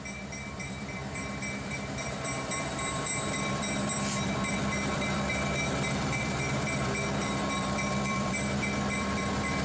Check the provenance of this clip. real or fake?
fake